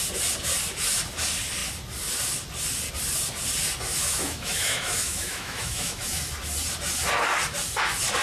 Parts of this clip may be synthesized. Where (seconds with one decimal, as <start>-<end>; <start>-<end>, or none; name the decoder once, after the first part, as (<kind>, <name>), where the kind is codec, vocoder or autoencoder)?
4.0-6.2 (autoencoder, DAC-VAE)